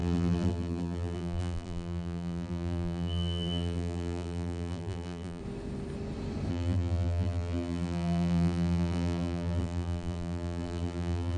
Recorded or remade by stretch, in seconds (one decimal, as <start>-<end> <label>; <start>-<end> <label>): 0.0-5.4 remade; 5.4-6.5 recorded; 6.5-11.4 remade